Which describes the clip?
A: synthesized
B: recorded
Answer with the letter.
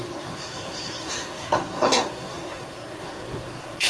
A